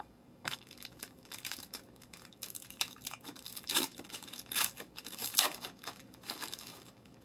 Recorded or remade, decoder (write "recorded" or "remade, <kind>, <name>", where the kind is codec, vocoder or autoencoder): remade, codec, DAC